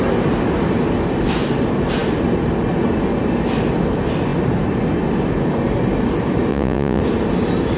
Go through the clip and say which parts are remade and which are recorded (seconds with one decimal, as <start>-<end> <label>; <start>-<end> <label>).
0.0-6.5 recorded; 6.5-7.0 remade; 7.0-7.8 recorded

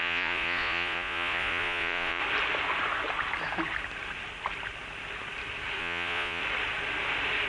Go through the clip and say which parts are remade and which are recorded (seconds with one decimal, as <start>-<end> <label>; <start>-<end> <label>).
0.0-2.2 remade; 2.2-5.8 recorded; 5.8-6.4 remade; 6.4-7.5 recorded

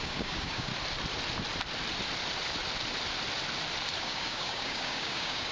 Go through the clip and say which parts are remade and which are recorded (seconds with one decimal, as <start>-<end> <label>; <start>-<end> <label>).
0.0-0.7 remade; 0.7-4.0 recorded; 4.0-5.5 remade

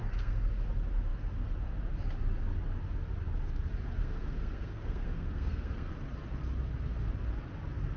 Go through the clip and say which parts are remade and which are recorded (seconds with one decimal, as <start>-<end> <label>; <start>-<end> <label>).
0.0-0.5 remade; 0.5-4.0 recorded; 4.0-5.9 remade; 5.9-8.0 recorded

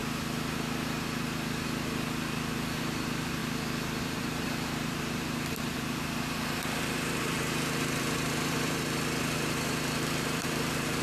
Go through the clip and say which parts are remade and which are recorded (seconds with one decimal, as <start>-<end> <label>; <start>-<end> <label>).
0.0-2.8 recorded; 2.8-3.4 remade; 3.4-4.0 recorded; 4.0-11.0 remade

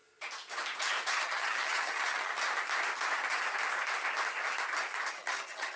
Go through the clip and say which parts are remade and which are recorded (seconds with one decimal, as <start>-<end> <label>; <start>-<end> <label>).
0.0-1.1 recorded; 1.1-2.3 remade; 2.3-5.1 recorded; 5.1-5.8 remade